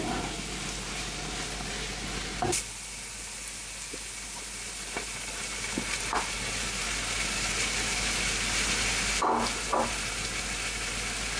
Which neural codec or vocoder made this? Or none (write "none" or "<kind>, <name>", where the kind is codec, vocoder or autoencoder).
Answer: none